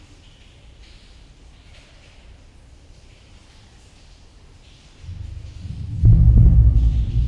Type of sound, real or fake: fake